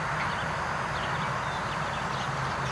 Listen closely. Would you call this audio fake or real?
real